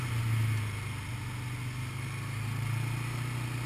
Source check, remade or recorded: recorded